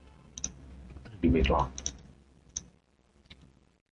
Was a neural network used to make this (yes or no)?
no